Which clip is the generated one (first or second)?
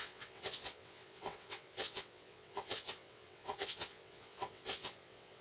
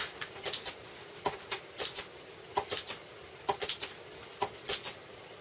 first